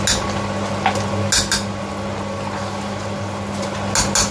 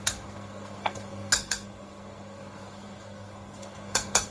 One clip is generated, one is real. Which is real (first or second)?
first